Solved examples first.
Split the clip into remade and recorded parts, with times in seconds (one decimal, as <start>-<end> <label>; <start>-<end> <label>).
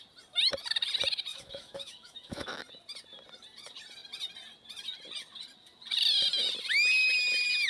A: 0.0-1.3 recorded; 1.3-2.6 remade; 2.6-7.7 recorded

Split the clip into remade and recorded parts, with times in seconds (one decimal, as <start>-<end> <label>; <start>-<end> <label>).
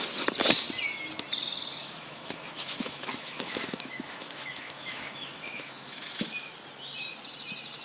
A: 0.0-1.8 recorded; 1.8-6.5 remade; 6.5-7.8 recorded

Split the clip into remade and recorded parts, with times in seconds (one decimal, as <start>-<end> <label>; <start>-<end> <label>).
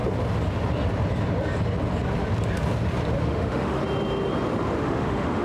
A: 0.0-3.2 recorded; 3.2-3.8 remade; 3.8-4.8 recorded; 4.8-5.4 remade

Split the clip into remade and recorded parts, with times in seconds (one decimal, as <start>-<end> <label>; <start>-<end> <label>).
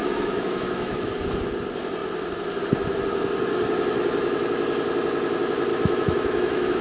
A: 0.0-1.1 remade; 1.1-5.7 recorded; 5.7-6.8 remade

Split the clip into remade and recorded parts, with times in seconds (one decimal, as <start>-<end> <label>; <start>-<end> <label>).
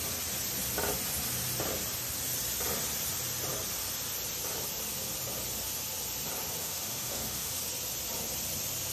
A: 0.0-6.6 recorded; 6.6-7.6 remade; 7.6-8.9 recorded